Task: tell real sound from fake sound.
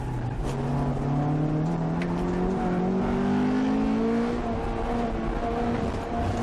real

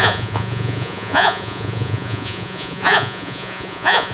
fake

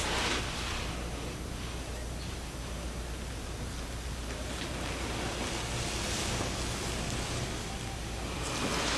real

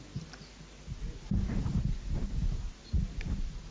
real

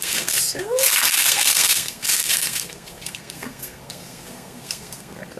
fake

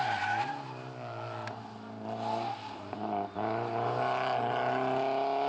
real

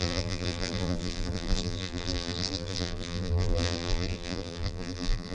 fake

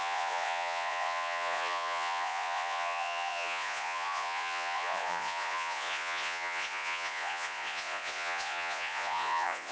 fake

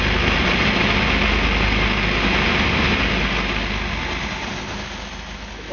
real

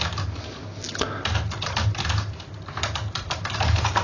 real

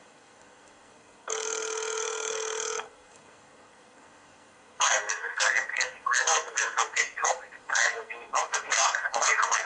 fake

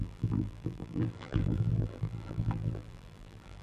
fake